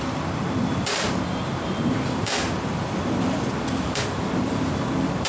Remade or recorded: recorded